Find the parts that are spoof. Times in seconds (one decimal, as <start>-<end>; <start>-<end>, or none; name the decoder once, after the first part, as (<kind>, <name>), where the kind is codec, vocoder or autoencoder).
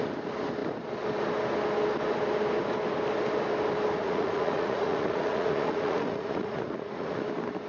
4.0-7.2 (vocoder, Vocos)